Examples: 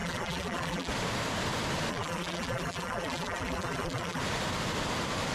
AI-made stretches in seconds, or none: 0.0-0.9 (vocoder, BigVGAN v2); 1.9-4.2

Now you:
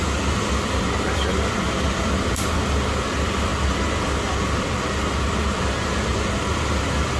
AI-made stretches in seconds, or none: 0.0-3.5 (vocoder, BigVGAN v2); 6.3-7.2

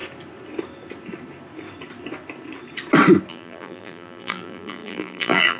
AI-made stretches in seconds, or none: 3.3-5.6 (vocoder, BigVGAN v2)

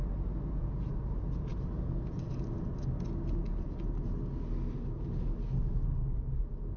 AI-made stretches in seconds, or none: none

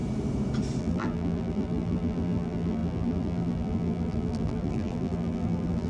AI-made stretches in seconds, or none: 0.8-5.9 (vocoder, BigVGAN v2)